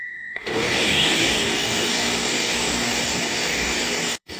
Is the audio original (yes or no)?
no